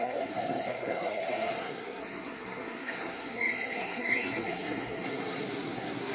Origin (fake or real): fake